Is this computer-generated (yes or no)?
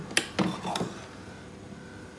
no